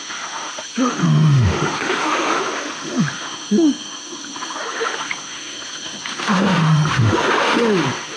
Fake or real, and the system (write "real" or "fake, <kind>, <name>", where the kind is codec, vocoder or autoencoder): fake, autoencoder, DAC-VAE